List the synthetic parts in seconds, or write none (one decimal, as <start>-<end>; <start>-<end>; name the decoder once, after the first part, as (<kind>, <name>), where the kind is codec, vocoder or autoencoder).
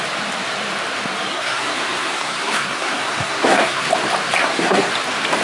1.3-3.9 (codec, SNAC); 4.4-4.9